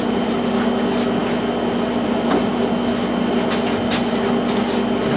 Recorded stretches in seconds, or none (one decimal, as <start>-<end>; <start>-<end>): 0.0-5.2